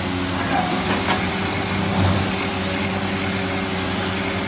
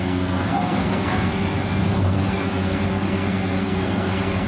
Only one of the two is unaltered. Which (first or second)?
first